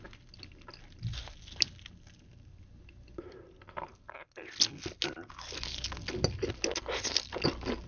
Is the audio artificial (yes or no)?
no